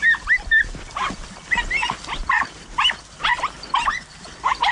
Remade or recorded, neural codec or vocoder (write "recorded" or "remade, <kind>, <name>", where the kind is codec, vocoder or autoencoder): recorded